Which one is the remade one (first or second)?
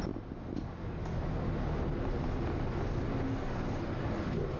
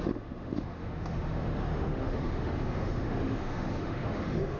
second